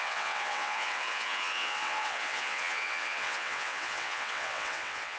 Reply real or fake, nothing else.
fake